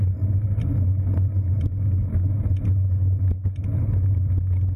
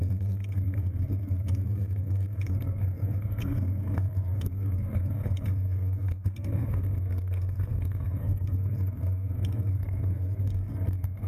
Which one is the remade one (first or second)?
second